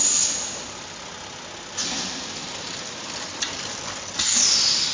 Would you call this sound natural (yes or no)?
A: yes